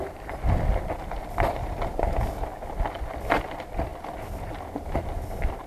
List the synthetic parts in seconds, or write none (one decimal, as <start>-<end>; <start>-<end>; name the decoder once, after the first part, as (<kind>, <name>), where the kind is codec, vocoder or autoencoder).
none